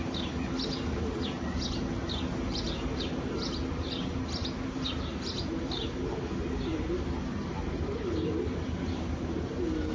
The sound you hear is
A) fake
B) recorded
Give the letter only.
B